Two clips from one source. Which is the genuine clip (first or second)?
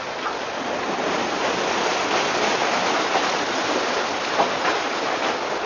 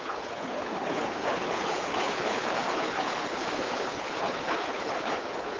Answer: first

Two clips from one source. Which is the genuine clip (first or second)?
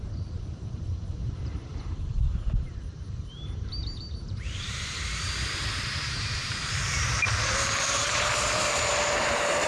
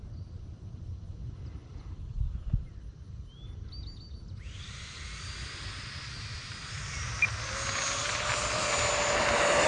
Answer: second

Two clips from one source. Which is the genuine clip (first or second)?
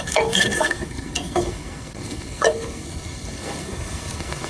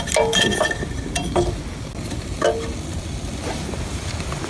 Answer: second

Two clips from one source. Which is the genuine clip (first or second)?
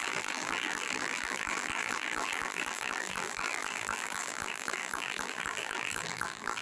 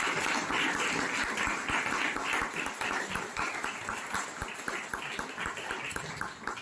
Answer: second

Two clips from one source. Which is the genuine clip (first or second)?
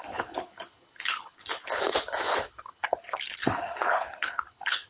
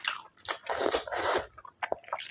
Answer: second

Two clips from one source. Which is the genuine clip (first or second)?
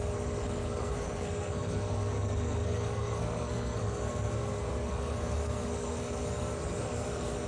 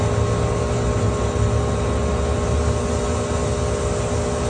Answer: second